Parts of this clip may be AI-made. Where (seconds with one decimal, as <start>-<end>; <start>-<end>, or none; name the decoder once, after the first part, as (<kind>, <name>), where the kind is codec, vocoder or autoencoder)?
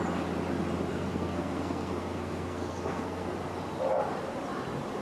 0.9-3.3 (codec, SNAC)